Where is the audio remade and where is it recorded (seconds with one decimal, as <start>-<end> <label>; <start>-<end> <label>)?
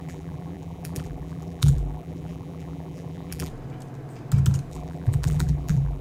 0.0-3.5 remade; 3.5-4.7 recorded; 4.7-6.0 remade